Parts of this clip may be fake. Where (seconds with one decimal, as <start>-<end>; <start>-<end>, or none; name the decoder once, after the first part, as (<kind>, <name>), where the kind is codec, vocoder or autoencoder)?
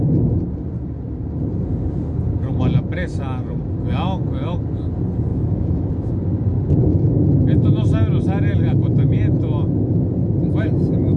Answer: 5.3-5.9 (autoencoder, DAC-VAE)